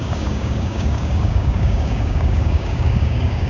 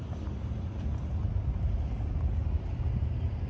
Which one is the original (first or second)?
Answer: second